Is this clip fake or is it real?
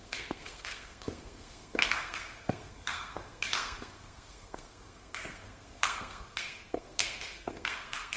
fake